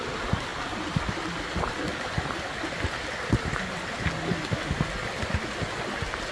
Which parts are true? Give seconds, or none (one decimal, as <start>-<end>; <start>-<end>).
0.0-6.3